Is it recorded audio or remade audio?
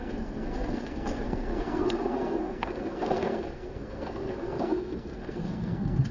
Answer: remade